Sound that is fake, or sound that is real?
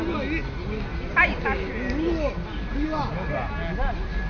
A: real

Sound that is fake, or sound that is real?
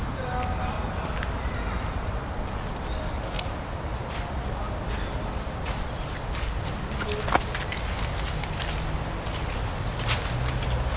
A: real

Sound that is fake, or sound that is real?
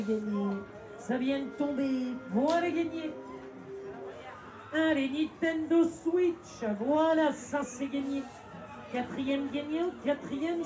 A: real